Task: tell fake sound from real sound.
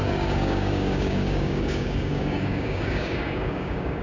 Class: fake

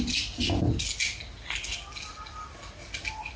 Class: real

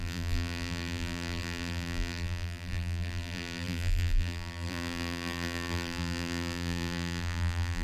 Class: fake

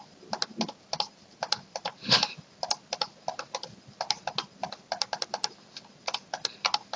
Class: real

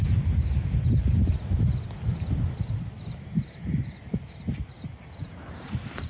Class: real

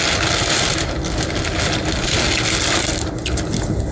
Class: real